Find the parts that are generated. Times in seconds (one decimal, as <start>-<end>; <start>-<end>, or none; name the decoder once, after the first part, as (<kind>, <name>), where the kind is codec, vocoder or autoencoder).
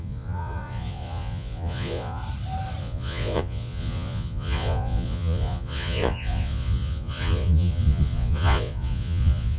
0.0-2.2 (vocoder, Vocos); 2.8-9.6